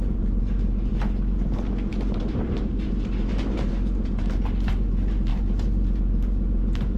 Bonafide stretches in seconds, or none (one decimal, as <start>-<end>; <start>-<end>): 0.9-1.9